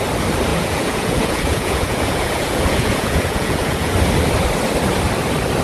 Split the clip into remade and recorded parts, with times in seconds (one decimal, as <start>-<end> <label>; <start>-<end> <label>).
0.0-0.5 recorded; 0.5-3.9 remade; 3.9-5.6 recorded